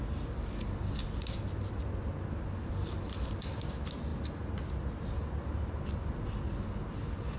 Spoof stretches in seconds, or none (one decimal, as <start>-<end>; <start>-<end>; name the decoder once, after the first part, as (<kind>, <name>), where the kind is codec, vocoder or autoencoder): none